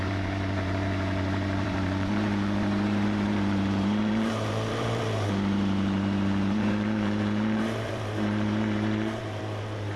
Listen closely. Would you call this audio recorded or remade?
remade